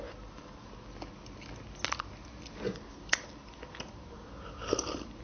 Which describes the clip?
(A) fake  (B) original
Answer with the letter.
B